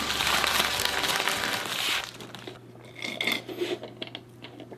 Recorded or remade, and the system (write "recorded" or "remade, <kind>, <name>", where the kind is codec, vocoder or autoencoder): recorded